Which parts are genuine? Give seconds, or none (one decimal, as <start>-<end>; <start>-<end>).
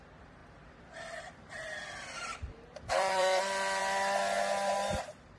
0.0-0.4; 3.4-5.4